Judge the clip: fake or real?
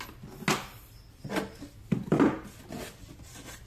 real